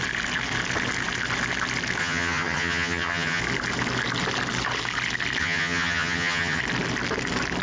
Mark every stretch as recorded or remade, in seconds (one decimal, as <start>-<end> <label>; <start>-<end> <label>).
0.0-2.0 recorded; 2.0-3.4 remade; 3.4-5.4 recorded; 5.4-6.6 remade; 6.6-7.6 recorded